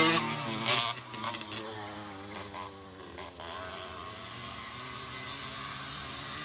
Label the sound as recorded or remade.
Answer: recorded